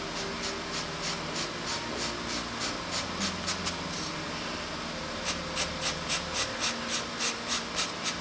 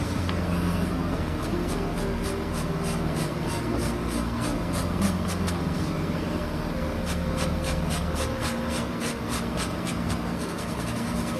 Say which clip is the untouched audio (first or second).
first